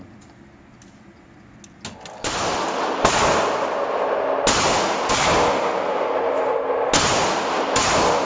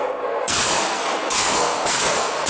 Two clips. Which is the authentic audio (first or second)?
first